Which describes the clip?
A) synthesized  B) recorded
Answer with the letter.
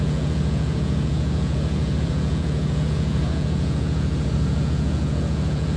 A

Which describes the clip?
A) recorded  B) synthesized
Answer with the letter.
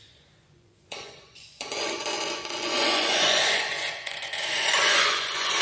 B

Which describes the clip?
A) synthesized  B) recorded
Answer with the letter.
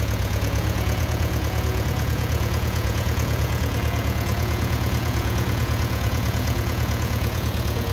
A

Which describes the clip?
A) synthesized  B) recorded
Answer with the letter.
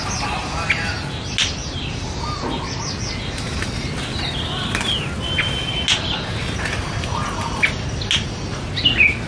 B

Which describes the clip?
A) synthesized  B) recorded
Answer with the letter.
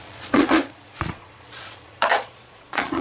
A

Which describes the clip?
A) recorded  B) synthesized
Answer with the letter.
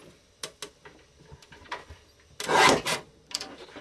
A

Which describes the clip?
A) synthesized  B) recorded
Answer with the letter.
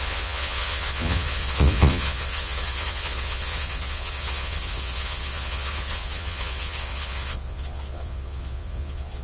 A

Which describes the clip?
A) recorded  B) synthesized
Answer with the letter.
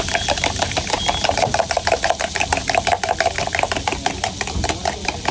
A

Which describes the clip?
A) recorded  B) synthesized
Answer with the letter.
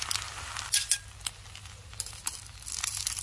A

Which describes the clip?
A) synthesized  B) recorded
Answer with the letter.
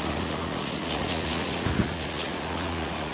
A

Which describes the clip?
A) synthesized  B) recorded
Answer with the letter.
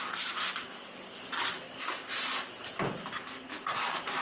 B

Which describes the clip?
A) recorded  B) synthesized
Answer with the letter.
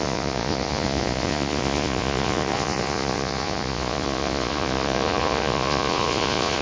B